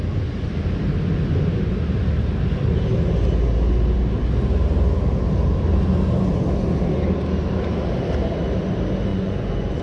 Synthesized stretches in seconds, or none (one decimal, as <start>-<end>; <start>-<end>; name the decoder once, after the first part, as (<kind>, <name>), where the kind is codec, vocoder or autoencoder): 9.1-9.8 (vocoder, Vocos)